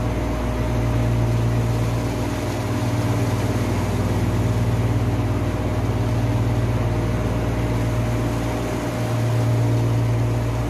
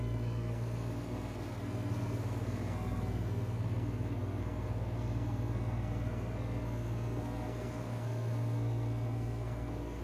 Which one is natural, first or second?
first